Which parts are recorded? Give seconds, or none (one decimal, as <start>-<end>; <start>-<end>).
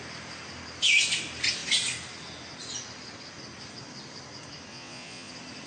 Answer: 0.0-4.7; 5.3-5.7